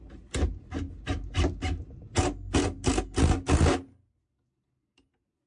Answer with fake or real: real